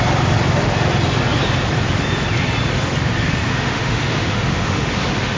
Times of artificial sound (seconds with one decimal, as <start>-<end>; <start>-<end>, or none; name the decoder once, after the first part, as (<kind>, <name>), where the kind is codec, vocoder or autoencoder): 3.5-5.4 (autoencoder, DAC-VAE)